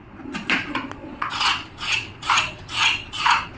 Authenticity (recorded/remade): remade